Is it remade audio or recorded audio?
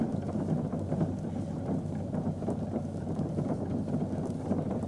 remade